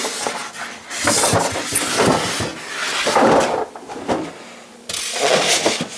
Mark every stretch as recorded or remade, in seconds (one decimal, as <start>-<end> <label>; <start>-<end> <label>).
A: 0.0-6.0 recorded